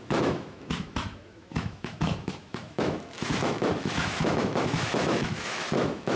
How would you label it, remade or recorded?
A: remade